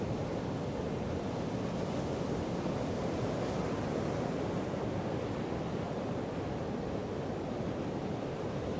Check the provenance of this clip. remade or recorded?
recorded